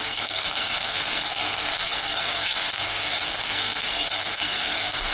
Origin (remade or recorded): remade